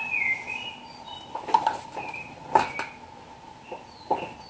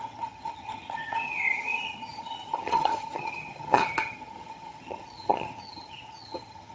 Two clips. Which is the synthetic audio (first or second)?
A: second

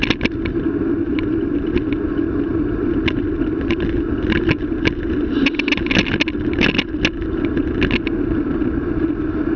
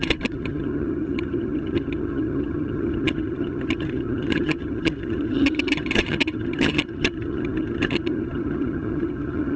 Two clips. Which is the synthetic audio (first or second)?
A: second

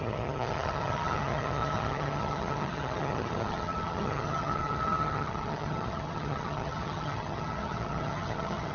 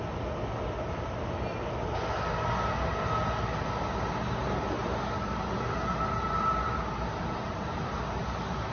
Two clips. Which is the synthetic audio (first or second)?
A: first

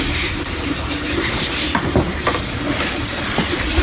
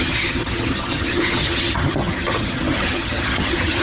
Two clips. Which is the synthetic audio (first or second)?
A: second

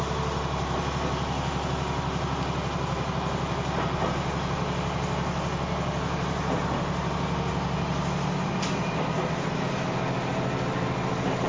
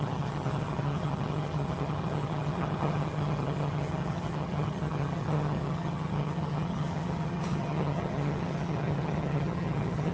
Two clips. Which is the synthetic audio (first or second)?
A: second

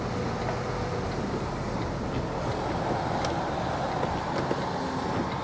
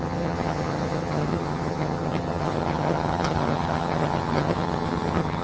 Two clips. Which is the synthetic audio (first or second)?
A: second